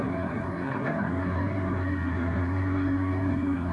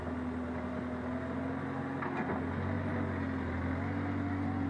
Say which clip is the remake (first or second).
first